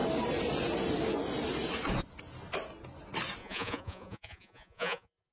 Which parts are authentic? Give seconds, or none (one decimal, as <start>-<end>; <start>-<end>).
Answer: 0.0-3.4